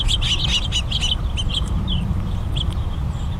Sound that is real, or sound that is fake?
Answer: real